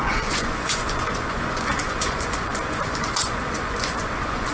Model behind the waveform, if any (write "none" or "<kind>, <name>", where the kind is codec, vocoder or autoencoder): vocoder, Vocos